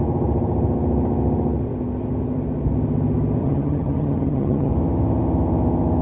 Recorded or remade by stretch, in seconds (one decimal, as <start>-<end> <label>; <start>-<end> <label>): 0.0-3.4 recorded; 3.4-4.7 remade; 4.7-6.0 recorded